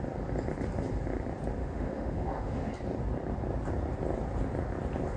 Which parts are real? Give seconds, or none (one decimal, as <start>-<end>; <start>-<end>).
0.0-1.6; 2.7-5.2